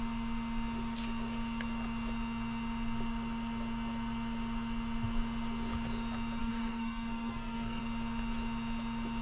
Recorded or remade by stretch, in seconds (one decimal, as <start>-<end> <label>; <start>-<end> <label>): 0.0-6.4 recorded; 6.4-7.8 remade; 7.8-9.2 recorded